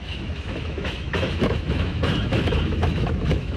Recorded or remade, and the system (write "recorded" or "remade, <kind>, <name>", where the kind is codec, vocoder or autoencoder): remade, autoencoder, DAC-VAE